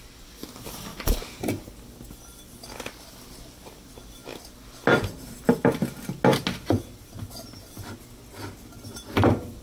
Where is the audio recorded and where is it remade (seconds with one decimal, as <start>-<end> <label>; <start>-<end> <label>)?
0.0-0.9 recorded; 0.9-1.6 remade; 1.6-9.6 recorded